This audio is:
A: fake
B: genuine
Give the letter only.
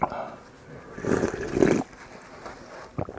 B